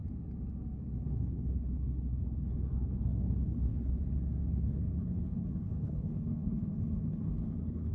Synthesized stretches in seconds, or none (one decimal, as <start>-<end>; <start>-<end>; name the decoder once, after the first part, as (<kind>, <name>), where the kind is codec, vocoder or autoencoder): 1.0-3.9 (codec, HILCodec); 4.5-7.9